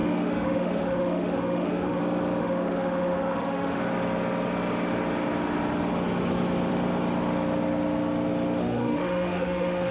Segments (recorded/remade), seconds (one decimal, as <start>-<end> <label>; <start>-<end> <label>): 0.0-2.0 remade; 2.0-2.4 recorded; 2.4-3.8 remade; 3.8-8.6 recorded; 8.6-9.9 remade